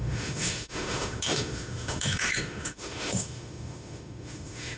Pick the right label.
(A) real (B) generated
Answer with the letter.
B